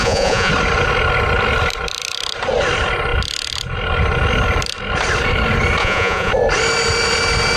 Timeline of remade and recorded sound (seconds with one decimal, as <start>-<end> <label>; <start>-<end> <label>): 0.0-0.5 remade; 0.5-5.8 recorded; 5.8-6.3 remade; 6.3-7.6 recorded